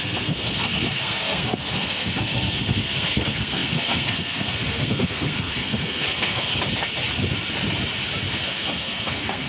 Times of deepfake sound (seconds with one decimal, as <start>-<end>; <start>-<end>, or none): 0.0-6.5; 8.3-9.5